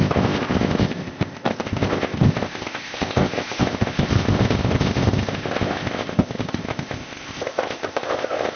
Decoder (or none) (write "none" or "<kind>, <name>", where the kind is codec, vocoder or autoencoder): codec, ZipCodec